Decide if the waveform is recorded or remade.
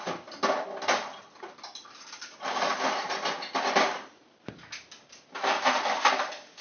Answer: recorded